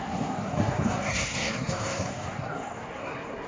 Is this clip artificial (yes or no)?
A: yes